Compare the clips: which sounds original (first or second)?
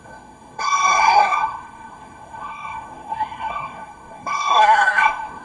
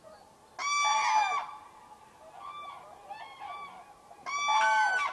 second